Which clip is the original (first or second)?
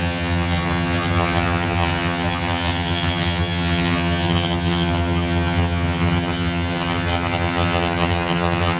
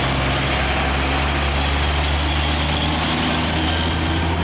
second